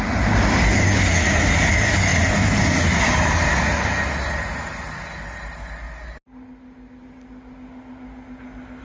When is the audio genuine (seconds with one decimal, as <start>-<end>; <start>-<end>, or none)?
0.0-8.8